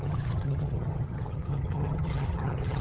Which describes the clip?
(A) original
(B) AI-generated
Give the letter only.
B